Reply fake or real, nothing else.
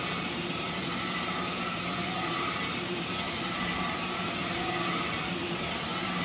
fake